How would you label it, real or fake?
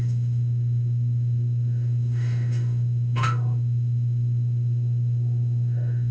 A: fake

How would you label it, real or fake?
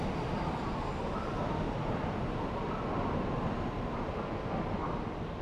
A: real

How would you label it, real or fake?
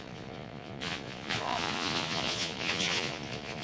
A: fake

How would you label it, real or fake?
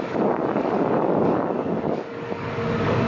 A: fake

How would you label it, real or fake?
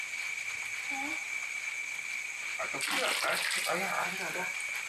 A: real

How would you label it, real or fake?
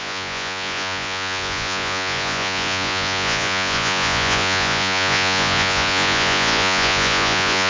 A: fake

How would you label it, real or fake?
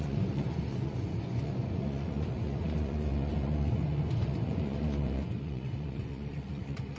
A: fake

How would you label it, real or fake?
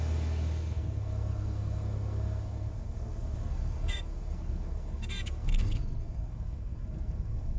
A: fake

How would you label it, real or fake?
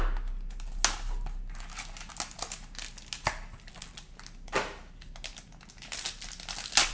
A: real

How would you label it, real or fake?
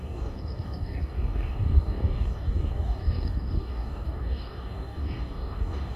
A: fake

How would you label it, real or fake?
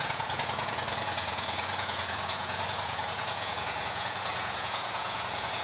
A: fake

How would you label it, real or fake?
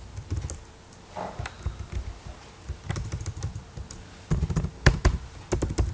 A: real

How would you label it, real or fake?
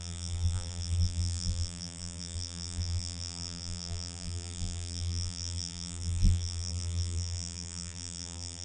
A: fake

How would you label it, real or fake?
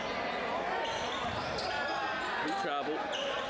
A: real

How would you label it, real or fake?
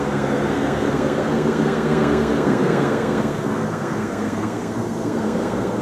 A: fake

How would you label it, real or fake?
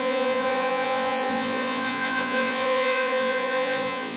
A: fake